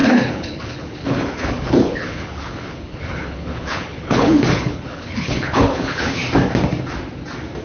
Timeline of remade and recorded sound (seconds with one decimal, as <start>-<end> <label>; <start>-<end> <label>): 0.0-6.2 remade; 6.2-7.6 recorded